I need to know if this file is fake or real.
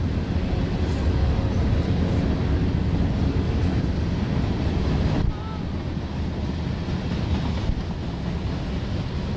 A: real